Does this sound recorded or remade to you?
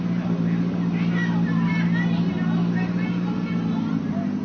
recorded